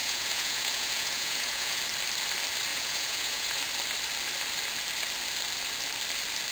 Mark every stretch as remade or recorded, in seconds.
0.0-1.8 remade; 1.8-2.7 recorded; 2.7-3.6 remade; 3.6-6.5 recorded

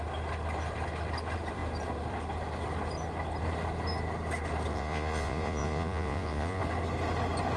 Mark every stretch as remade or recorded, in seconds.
0.0-4.7 recorded; 4.7-6.6 remade; 6.6-7.6 recorded

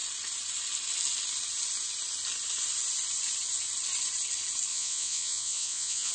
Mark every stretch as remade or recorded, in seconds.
0.0-4.7 recorded; 4.7-6.1 remade

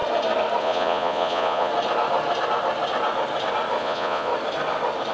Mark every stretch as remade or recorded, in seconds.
0.0-0.6 recorded; 0.6-1.7 remade; 1.7-3.8 recorded; 3.8-4.3 remade; 4.3-5.1 recorded

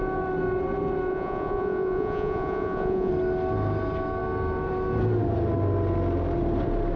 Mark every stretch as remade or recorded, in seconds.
0.0-1.1 recorded; 1.1-3.1 remade; 3.1-7.0 recorded

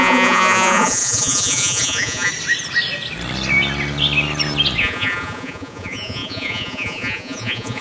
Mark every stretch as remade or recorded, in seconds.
0.0-2.3 remade; 2.3-4.8 recorded; 4.8-7.8 remade